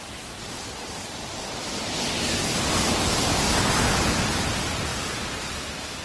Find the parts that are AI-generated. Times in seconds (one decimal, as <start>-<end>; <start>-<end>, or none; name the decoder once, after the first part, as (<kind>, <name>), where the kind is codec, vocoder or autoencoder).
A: 4.9-6.0 (vocoder, BigVGAN v2)